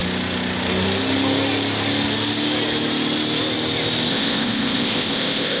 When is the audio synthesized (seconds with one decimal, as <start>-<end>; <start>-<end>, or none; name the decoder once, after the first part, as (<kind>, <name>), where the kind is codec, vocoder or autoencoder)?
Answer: 4.1-5.6 (codec, ZipCodec)